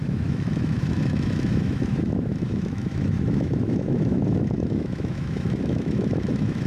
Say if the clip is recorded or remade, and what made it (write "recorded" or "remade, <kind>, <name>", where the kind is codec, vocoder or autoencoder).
remade, autoencoder, DAC-VAE